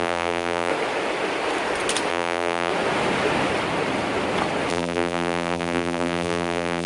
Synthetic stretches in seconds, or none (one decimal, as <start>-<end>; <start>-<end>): 0.0-0.7; 2.1-2.7; 4.7-6.9